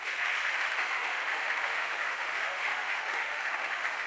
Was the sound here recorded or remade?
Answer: remade